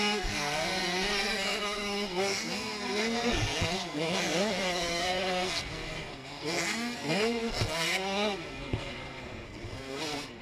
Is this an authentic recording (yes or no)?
no